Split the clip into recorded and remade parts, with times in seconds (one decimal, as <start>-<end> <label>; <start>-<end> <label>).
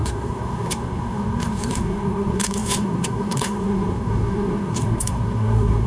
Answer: 0.0-5.9 remade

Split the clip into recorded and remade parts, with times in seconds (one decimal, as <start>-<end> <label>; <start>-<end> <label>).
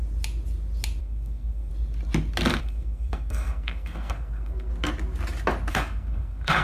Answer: 0.0-1.0 recorded; 1.0-1.7 remade; 1.7-2.6 recorded; 2.6-4.7 remade; 4.7-5.7 recorded; 5.7-6.6 remade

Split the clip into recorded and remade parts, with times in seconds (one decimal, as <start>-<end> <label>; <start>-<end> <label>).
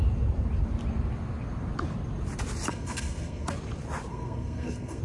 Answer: 0.0-2.7 recorded; 2.7-3.5 remade; 3.5-4.1 recorded; 4.1-5.0 remade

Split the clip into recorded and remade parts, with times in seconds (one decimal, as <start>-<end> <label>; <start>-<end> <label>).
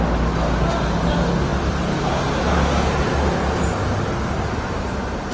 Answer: 0.0-5.3 recorded